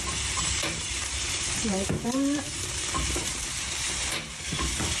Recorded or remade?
remade